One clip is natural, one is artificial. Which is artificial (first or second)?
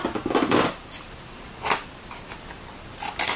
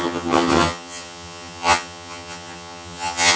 second